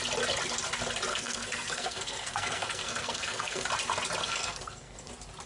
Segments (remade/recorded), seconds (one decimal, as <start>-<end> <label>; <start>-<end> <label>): 0.0-1.1 recorded; 1.1-3.7 remade; 3.7-4.2 recorded; 4.2-5.1 remade; 5.1-5.5 recorded